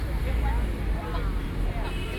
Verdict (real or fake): real